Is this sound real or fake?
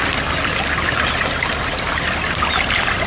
real